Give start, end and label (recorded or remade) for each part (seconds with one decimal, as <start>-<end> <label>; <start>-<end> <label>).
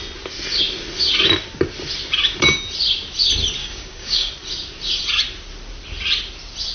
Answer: 0.0-3.6 recorded; 3.6-4.3 remade; 4.3-6.7 recorded